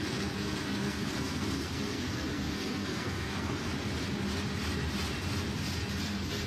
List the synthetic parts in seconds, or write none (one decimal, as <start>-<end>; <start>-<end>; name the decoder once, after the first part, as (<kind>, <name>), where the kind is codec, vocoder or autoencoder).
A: 0.0-3.7 (codec, SNAC); 6.0-6.5